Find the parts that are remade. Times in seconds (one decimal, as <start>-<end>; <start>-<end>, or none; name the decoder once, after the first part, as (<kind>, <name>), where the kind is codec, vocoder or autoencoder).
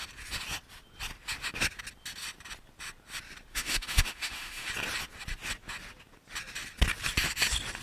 3.5-4.7 (autoencoder, DAC-VAE)